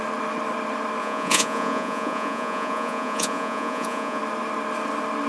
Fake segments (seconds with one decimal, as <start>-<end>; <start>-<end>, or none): 1.0-4.2